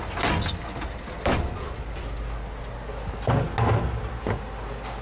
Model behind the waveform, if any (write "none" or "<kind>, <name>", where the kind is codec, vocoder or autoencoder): none